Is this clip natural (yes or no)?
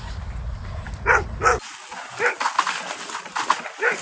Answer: yes